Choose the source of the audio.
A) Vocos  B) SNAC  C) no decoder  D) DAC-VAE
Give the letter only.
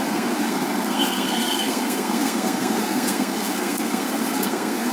B